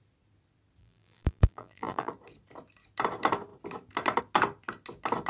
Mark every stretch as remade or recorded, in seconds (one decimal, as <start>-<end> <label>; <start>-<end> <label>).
0.0-0.8 recorded; 0.8-2.1 remade; 2.1-5.3 recorded